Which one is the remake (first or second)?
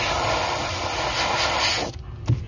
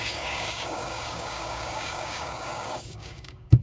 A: second